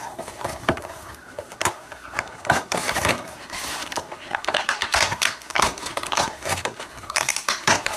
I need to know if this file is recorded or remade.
remade